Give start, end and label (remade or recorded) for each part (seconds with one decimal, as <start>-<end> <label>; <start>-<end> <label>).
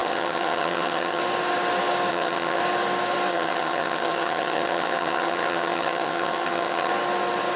0.0-1.2 remade; 1.2-2.1 recorded; 2.1-2.6 remade; 2.6-3.3 recorded; 3.3-6.9 remade; 6.9-7.6 recorded